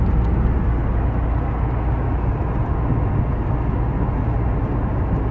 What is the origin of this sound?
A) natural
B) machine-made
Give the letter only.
A